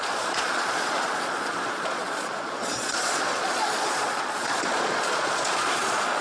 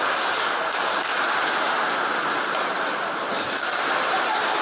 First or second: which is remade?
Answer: first